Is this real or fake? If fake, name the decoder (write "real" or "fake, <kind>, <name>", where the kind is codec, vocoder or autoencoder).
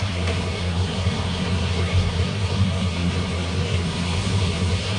fake, codec, SNAC